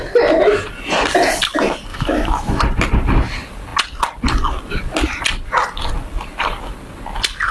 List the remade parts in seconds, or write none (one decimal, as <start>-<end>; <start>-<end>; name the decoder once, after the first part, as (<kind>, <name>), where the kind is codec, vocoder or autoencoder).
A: 1.9-2.6 (autoencoder, DAC-VAE)